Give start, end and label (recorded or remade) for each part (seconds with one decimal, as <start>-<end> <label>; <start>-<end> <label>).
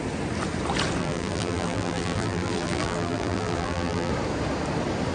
0.0-1.0 recorded; 1.0-4.1 remade; 4.1-5.1 recorded